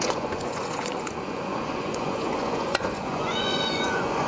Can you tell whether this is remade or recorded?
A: remade